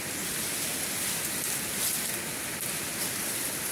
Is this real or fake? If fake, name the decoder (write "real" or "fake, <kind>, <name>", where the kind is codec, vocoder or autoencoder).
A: real